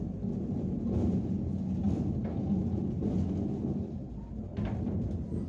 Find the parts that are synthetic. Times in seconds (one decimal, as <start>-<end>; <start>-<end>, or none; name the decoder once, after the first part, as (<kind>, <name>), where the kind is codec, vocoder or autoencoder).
none

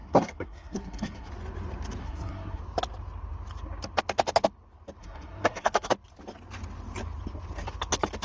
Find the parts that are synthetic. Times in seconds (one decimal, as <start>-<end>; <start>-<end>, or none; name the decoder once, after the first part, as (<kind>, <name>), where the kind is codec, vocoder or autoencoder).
0.0-1.3 (codec, SNAC); 2.0-2.6; 5.0-5.9

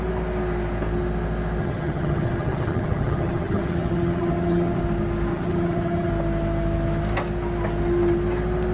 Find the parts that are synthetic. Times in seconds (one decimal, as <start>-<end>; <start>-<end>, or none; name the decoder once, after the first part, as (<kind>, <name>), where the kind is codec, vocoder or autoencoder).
1.6-4.8 (vocoder, HiFi-GAN); 5.3-6.1

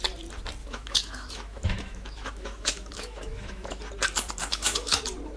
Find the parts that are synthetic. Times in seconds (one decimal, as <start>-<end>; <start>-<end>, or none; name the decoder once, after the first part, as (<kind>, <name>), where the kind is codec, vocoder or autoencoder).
0.6-3.8 (autoencoder, DAC-VAE); 4.4-5.0

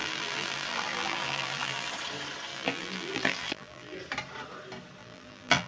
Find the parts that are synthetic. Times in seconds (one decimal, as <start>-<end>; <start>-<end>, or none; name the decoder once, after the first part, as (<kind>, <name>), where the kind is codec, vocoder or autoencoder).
0.0-1.9 (vocoder, BigVGAN v2); 2.5-4.0; 5.0-5.7